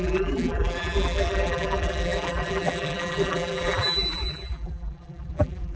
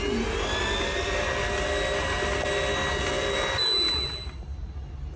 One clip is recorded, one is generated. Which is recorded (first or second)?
second